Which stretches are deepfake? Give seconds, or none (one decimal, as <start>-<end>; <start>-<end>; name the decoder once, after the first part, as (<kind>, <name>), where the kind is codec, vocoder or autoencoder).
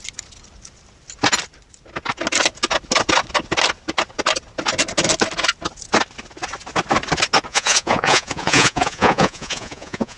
7.5-10.2 (vocoder, Vocos)